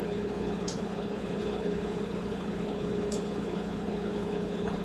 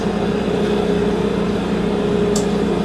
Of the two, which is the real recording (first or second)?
second